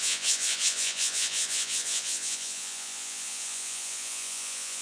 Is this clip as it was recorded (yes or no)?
no